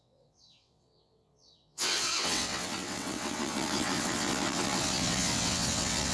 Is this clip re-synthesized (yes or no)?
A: yes